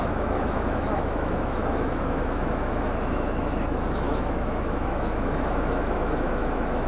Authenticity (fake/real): fake